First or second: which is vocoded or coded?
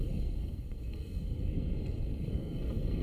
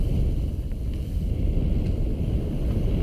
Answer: first